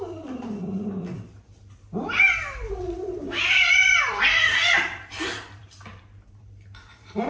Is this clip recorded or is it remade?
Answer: remade